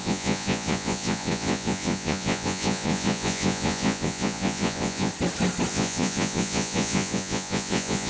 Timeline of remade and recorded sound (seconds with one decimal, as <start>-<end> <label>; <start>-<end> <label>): 0.0-5.1 remade; 5.1-5.7 recorded; 5.7-8.1 remade